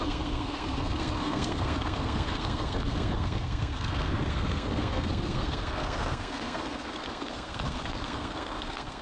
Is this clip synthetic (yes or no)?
yes